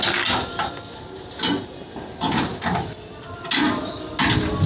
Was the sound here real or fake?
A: real